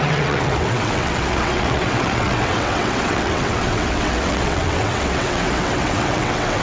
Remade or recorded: remade